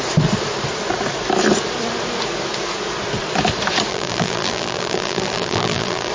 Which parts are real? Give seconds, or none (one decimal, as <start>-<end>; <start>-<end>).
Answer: 0.0-3.9

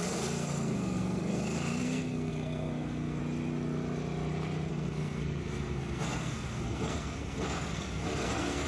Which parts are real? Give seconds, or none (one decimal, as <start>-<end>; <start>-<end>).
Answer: 3.2-4.7

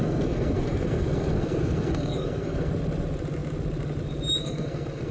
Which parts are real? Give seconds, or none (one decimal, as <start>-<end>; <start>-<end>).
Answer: 2.7-4.4